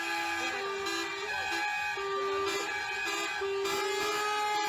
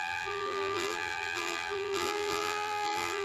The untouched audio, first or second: first